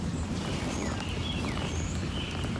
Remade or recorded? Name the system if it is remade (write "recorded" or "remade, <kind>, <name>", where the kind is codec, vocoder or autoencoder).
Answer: recorded